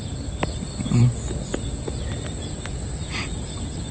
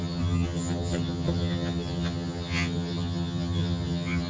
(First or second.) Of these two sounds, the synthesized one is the second